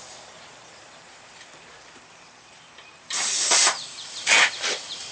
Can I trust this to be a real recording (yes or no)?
no